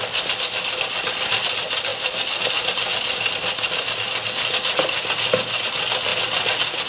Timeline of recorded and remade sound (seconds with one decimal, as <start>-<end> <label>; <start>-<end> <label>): 0.0-6.9 recorded